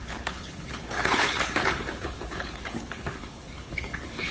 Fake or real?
fake